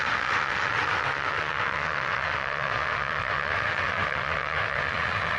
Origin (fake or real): fake